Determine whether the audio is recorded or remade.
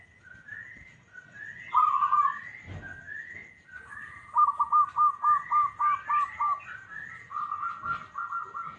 recorded